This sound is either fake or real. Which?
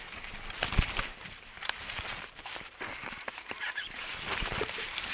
fake